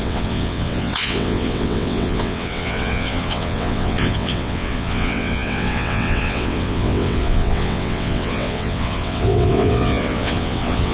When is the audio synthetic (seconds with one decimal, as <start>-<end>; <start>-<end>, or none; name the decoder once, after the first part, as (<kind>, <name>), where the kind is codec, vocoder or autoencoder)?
0.0-10.9 (vocoder, WaveNeXt)